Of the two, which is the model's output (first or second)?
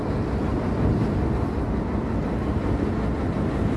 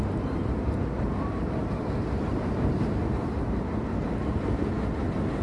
second